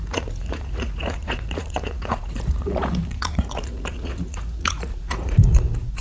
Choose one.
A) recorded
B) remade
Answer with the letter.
B